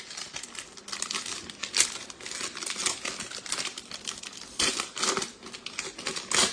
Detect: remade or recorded recorded